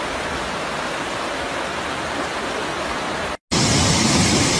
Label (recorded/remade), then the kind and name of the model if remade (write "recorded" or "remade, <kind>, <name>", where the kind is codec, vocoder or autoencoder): recorded